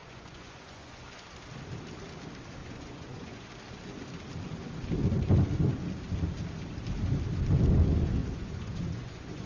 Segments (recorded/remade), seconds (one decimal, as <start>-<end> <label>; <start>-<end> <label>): 0.0-1.3 remade; 1.3-2.6 recorded; 2.6-3.5 remade; 3.5-8.2 recorded; 8.2-9.5 remade